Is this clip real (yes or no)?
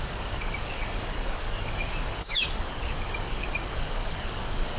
no